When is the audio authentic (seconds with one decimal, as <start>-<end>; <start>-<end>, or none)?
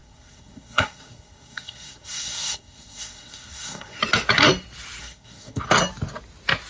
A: 4.0-5.0; 5.6-6.7